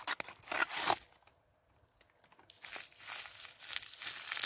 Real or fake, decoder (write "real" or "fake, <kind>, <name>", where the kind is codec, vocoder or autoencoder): real